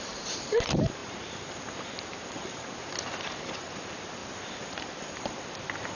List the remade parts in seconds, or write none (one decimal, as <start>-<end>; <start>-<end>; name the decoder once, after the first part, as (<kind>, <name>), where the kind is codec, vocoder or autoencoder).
0.0-5.9 (vocoder, BigVGAN v2)